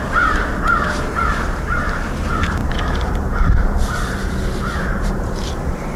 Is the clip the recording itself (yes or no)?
no